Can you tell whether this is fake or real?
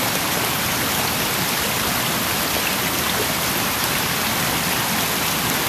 real